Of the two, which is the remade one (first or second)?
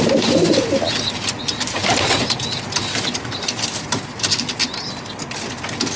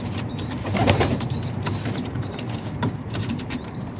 second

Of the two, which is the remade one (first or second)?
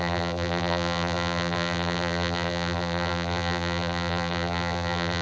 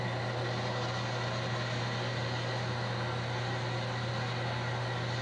first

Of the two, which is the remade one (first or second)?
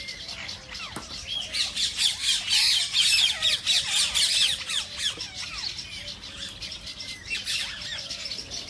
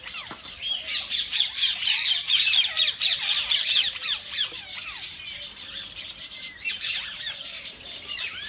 second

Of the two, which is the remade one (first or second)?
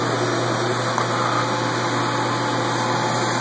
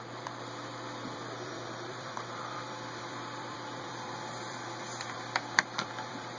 second